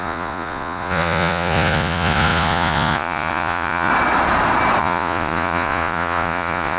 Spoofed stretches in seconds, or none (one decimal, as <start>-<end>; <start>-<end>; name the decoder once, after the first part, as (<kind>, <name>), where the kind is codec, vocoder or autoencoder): 0.0-3.9 (vocoder, Vocos); 4.8-6.8